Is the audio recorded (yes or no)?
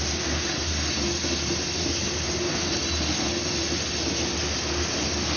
yes